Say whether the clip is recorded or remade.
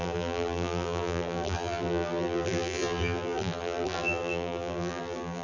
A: remade